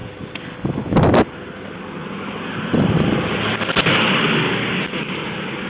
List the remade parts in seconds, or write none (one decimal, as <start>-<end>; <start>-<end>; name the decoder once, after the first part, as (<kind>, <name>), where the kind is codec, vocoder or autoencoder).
none